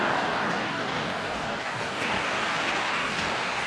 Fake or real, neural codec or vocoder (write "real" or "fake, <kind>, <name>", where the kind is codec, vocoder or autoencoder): fake, codec, DAC